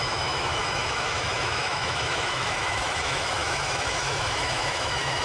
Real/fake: fake